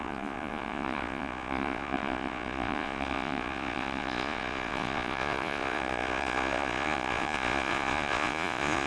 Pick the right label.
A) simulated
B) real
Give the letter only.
A